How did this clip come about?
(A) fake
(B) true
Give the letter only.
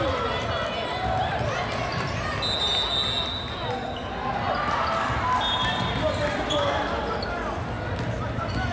B